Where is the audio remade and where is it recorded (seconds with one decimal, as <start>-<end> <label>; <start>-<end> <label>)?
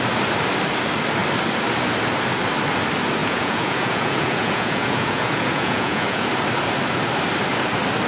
0.0-3.2 recorded; 3.2-6.3 remade; 6.3-8.1 recorded